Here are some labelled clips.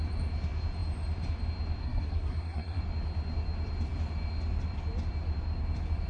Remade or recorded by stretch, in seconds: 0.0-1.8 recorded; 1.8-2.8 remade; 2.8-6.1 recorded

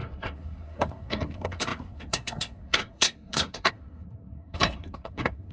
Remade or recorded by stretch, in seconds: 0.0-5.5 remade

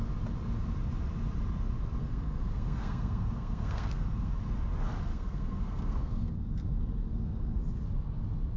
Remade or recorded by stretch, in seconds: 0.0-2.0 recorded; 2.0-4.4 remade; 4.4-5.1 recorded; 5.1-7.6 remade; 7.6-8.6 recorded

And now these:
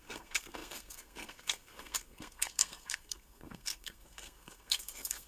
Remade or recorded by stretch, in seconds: 0.0-5.3 remade